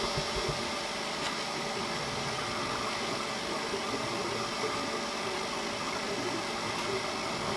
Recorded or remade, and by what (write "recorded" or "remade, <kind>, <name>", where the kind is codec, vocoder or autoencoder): recorded